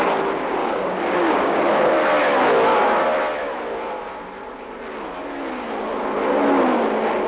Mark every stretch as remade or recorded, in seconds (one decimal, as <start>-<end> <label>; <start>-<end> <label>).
0.0-0.6 recorded; 0.6-1.6 remade; 1.6-7.3 recorded